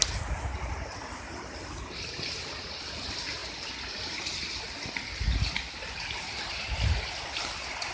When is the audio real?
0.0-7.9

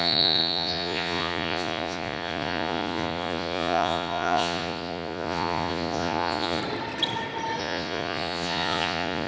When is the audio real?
6.6-7.6

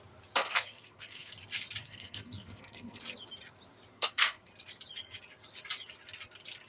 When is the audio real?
0.0-0.4; 1.3-1.8; 3.0-3.9; 4.5-6.7

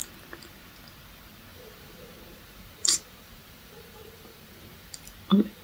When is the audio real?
0.0-1.5; 4.9-5.6